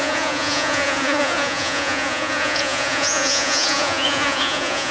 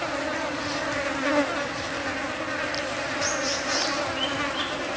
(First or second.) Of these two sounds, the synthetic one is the first